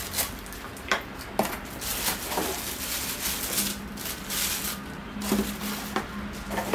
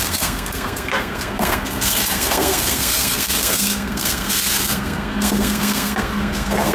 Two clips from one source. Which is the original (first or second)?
first